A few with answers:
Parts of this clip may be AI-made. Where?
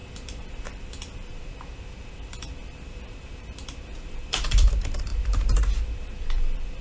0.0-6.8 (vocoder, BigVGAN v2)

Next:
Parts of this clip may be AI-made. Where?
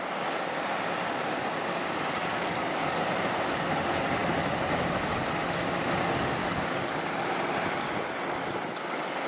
2.3-3.0 (codec, DAC); 6.4-7.0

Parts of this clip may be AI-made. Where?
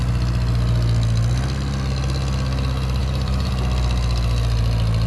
3.0-3.5 (vocoder, BigVGAN v2)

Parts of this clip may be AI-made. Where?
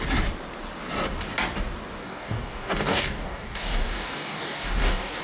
2.0-5.2 (codec, DAC)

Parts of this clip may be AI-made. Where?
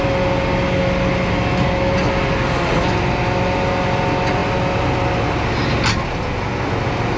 none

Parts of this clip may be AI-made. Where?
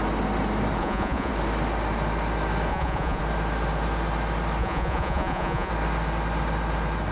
0.8-1.3 (vocoder, Vocos); 2.7-3.2; 4.6-5.7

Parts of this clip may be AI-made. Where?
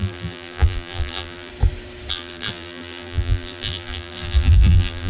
0.0-1.5 (vocoder, BigVGAN v2); 2.1-5.1